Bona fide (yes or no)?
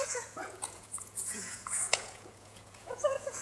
no